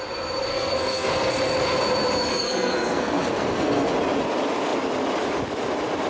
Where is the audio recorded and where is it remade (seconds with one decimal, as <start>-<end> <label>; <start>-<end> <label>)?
0.0-0.5 recorded; 0.5-1.3 remade; 1.3-2.3 recorded; 2.3-3.9 remade; 3.9-6.1 recorded